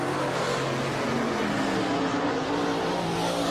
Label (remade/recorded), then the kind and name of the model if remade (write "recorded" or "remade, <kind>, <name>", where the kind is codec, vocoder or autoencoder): recorded